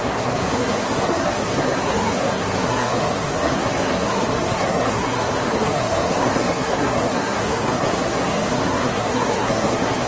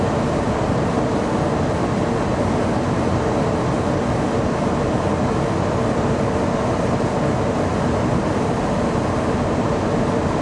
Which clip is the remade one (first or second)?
first